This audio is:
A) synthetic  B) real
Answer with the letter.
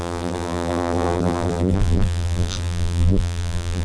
A